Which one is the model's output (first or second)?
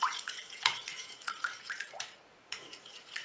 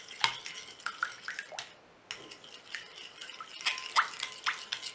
first